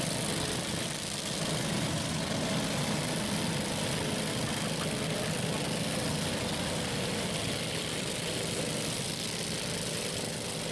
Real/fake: real